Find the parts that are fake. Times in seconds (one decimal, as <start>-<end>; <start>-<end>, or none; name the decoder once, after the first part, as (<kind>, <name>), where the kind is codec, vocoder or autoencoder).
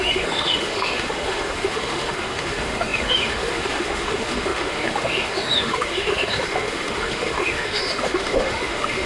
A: 0.0-9.1 (autoencoder, DAC-VAE)